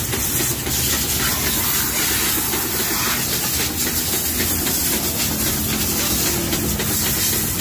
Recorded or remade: recorded